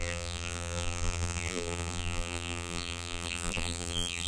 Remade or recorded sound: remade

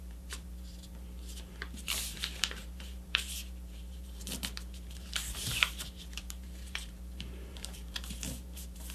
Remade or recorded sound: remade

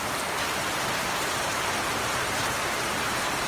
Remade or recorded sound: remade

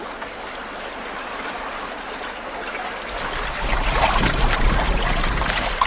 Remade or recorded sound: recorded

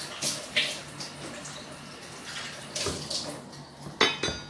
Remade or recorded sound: recorded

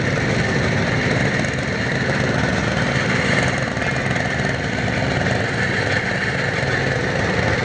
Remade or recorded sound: recorded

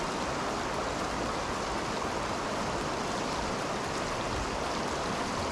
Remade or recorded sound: recorded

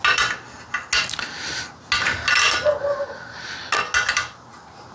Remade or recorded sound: recorded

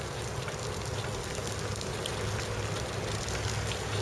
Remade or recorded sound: recorded